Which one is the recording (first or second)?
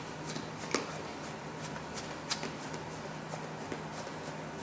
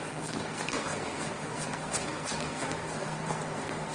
first